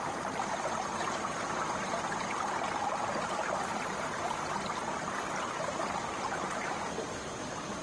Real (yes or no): yes